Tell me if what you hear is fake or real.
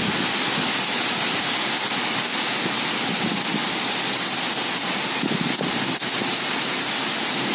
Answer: real